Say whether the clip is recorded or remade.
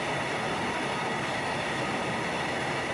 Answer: recorded